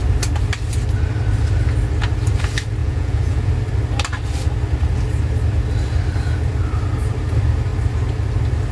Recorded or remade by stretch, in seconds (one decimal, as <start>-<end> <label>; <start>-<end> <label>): 0.0-2.8 recorded; 2.8-3.5 remade; 3.5-8.7 recorded